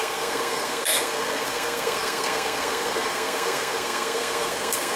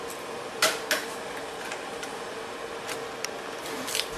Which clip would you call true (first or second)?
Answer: second